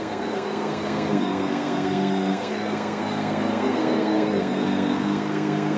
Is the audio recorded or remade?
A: remade